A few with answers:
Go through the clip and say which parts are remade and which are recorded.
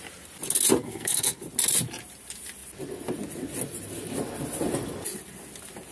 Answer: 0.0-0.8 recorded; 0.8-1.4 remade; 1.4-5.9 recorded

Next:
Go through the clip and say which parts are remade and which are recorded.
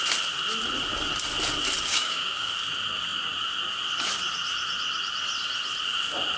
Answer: 0.0-1.9 recorded; 1.9-2.5 remade; 2.5-6.4 recorded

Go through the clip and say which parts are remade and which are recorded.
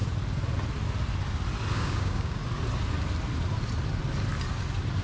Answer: 0.0-1.7 recorded; 1.7-2.4 remade; 2.4-5.0 recorded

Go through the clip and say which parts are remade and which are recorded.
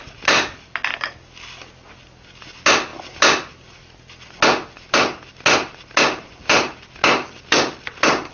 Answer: 0.0-8.3 recorded